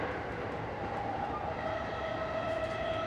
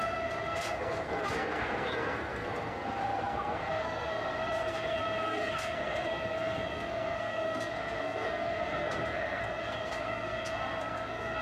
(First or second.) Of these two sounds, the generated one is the second